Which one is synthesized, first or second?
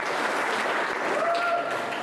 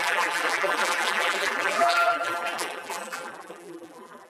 second